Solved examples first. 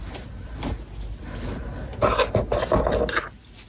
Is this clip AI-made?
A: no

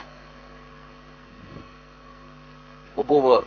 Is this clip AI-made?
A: yes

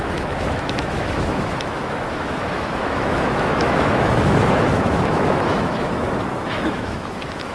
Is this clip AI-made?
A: yes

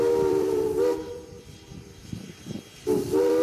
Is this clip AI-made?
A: yes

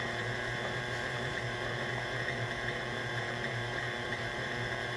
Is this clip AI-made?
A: yes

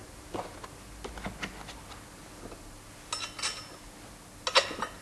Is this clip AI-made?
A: no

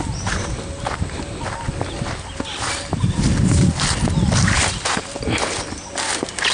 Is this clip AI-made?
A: no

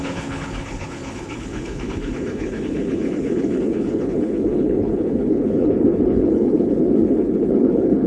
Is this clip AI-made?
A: yes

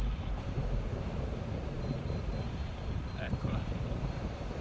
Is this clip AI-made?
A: yes